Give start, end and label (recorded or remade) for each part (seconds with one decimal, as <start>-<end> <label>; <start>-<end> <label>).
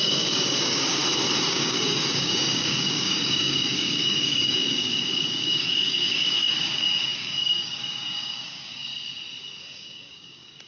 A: 0.0-1.0 remade; 1.0-1.5 recorded; 1.5-8.9 remade; 8.9-9.6 recorded; 9.6-10.7 remade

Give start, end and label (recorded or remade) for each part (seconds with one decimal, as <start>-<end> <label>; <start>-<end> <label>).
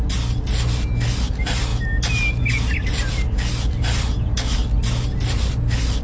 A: 0.0-6.0 recorded